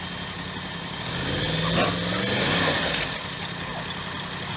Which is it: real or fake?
real